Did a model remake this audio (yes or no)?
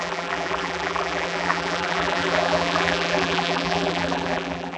yes